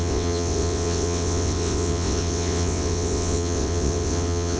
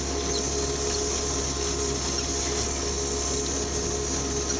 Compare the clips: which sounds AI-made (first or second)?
first